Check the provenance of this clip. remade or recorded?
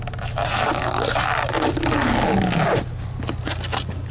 recorded